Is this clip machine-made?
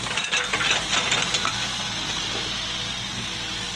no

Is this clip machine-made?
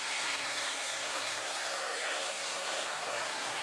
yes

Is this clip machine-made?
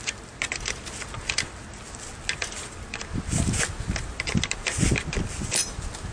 no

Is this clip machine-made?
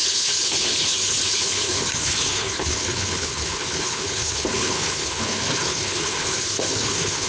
yes